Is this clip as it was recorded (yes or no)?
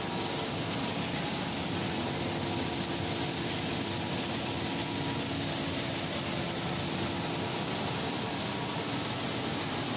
yes